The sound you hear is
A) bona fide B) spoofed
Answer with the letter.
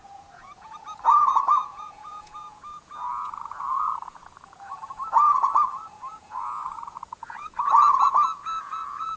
B